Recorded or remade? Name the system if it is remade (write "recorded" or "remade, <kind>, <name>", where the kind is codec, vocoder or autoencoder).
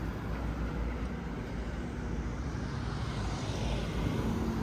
recorded